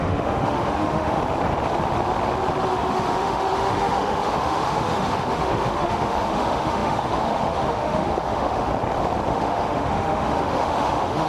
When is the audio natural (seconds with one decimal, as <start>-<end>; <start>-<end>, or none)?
1.2-2.7; 8.7-9.3